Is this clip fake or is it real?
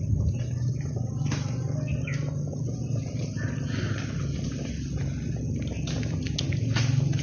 real